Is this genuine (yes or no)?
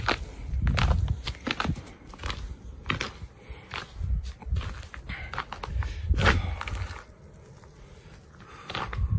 yes